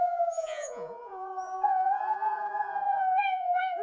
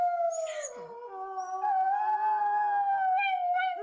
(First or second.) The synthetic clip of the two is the first